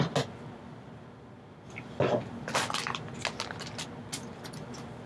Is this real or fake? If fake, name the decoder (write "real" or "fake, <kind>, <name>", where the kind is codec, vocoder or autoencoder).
real